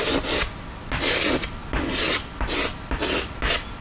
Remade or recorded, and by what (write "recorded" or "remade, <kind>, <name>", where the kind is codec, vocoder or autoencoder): recorded